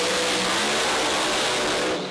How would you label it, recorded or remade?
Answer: recorded